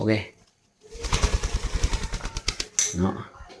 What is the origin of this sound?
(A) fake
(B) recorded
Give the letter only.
B